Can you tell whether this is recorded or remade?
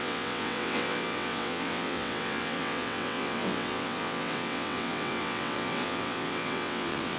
remade